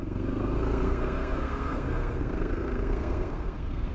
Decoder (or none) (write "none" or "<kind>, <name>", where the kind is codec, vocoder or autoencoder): codec, SNAC